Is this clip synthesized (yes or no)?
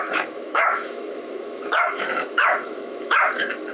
yes